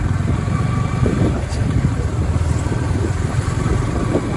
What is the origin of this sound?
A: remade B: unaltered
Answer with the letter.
A